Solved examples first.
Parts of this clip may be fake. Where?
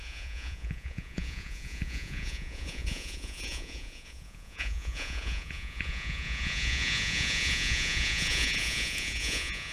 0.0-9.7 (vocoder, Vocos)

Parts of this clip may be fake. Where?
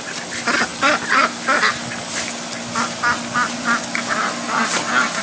none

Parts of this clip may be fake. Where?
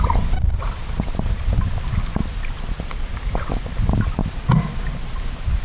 none